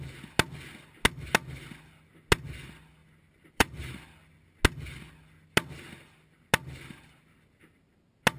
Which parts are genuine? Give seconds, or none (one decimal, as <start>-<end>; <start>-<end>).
0.0-3.0; 3.9-8.4